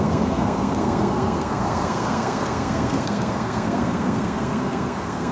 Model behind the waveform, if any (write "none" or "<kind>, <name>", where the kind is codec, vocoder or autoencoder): codec, SNAC